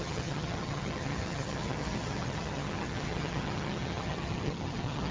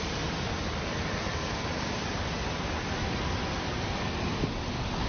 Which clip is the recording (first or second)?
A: second